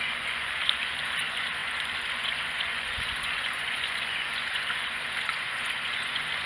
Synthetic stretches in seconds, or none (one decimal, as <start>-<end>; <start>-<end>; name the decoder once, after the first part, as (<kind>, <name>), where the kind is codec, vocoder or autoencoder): 0.0-6.5 (vocoder, Vocos)